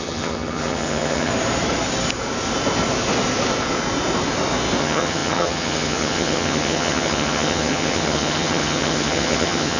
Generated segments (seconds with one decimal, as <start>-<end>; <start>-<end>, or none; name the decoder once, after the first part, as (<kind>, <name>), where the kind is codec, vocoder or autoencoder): 0.0-1.3 (vocoder, HiFi-GAN); 4.8-9.8